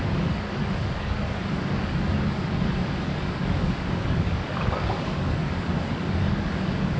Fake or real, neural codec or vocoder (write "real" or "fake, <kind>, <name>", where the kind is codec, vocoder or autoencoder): fake, codec, DAC